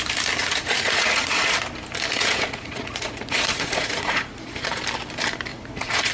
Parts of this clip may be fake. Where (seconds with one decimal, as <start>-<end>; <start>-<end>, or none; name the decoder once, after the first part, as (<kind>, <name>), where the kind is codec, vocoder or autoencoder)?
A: 0.4-1.6 (vocoder, Vocos); 2.1-4.8; 5.5-6.1